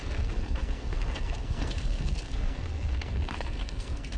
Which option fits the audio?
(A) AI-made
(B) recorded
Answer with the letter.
A